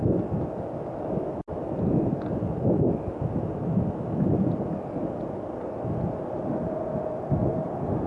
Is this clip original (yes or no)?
yes